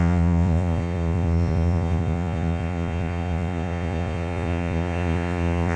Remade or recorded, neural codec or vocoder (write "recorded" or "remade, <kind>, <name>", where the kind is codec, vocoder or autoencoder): remade, vocoder, Vocos